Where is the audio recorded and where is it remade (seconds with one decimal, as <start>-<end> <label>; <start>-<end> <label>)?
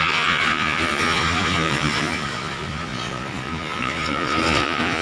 0.0-5.0 remade